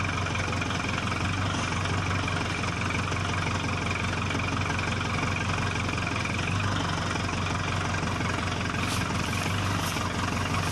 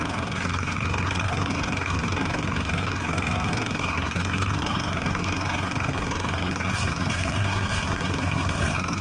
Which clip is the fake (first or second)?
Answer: second